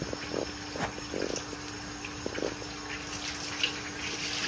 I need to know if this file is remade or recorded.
recorded